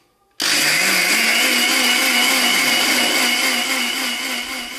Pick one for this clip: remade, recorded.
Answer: recorded